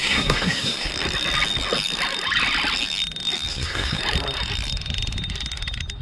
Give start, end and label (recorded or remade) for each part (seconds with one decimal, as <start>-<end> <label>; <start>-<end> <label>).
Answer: 0.0-0.9 remade; 0.9-3.5 recorded; 3.5-4.0 remade; 4.0-6.0 recorded